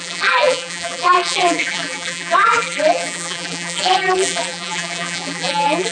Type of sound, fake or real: fake